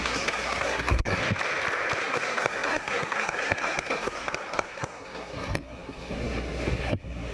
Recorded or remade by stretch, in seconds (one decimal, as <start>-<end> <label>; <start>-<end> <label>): 0.0-1.2 remade; 1.2-2.0 recorded; 2.0-7.3 remade

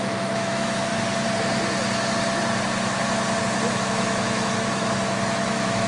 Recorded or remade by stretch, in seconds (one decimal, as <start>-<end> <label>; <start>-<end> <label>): 0.0-0.9 remade; 0.9-3.4 recorded; 3.4-5.9 remade

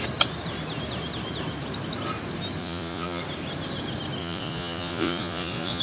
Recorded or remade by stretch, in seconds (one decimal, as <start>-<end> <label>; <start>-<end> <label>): 0.0-2.6 recorded; 2.6-3.2 remade; 3.2-4.2 recorded; 4.2-5.8 remade

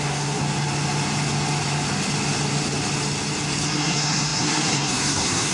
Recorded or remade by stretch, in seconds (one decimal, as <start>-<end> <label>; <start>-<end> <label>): 0.0-0.4 remade; 0.4-3.7 recorded; 3.7-5.5 remade

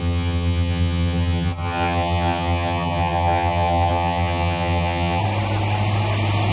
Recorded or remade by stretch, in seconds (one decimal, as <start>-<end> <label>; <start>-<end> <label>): 0.0-5.2 remade; 5.2-6.5 recorded

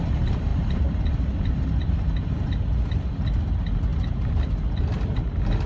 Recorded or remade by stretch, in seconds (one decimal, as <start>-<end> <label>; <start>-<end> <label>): 0.0-5.7 recorded